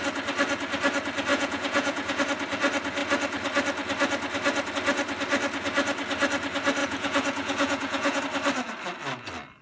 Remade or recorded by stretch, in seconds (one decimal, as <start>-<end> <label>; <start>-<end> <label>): 0.0-1.3 recorded; 1.3-2.2 remade; 2.2-6.8 recorded; 6.8-8.2 remade; 8.2-9.6 recorded